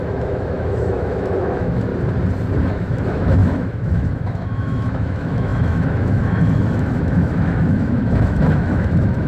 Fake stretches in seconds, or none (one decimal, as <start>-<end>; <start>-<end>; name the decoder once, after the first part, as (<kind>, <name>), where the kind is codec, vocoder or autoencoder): 0.0-1.9 (autoencoder, DAC-VAE); 2.6-9.3